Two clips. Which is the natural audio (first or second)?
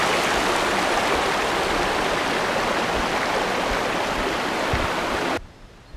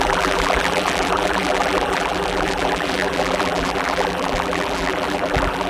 first